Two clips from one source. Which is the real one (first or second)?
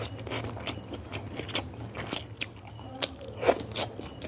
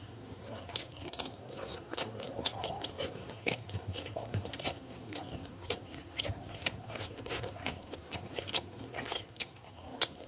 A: first